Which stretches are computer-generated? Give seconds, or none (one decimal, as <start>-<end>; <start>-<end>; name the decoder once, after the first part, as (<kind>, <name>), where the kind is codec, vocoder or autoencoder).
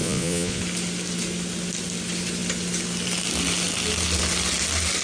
0.0-0.6 (vocoder, Vocos)